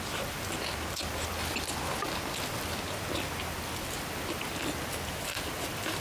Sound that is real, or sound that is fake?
real